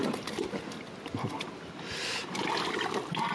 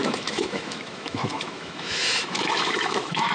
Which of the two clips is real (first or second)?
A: first